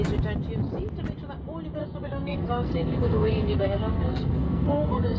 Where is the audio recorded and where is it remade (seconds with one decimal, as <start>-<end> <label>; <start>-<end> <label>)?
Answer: 0.0-1.8 recorded; 1.8-5.2 remade